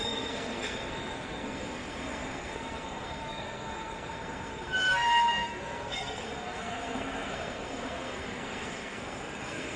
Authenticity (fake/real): fake